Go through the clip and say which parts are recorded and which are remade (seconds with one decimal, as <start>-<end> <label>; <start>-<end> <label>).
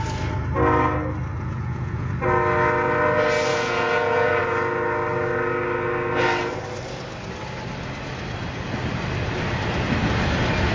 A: 0.0-1.3 recorded; 1.3-2.1 remade; 2.1-3.5 recorded; 3.5-4.4 remade; 4.4-10.7 recorded